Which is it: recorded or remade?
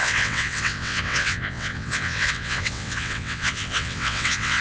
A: remade